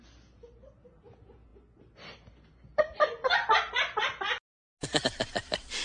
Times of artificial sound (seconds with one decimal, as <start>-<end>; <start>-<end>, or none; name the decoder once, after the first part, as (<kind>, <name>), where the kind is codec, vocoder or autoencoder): none